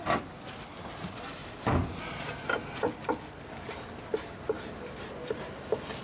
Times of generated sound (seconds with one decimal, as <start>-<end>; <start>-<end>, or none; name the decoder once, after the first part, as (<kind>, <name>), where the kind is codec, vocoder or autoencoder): none